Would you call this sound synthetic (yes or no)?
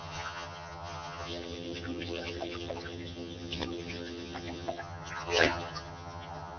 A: yes